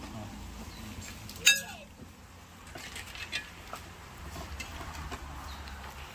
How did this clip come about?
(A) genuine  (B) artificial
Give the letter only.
A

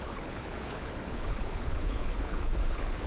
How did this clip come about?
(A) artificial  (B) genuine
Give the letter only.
A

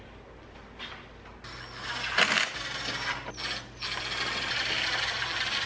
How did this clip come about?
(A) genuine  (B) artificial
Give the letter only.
A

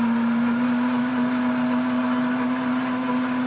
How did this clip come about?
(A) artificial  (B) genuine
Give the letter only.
B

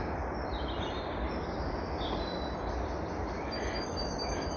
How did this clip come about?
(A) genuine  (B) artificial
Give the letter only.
A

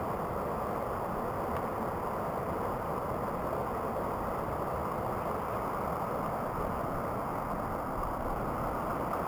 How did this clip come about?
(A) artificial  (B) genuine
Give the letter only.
B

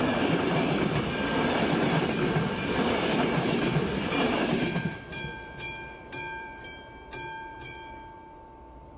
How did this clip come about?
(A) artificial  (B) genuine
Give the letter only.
A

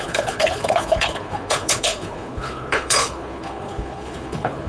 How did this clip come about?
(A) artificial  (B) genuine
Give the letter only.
A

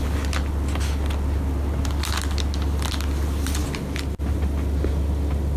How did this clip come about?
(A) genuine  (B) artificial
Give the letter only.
A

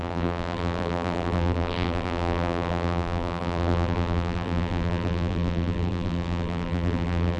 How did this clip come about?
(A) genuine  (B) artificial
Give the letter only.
B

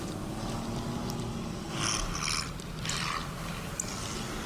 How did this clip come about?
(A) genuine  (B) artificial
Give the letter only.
A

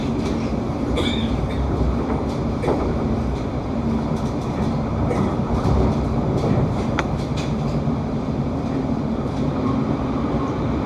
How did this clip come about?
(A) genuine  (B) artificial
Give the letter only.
B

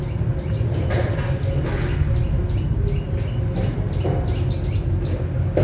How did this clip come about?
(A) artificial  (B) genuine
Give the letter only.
B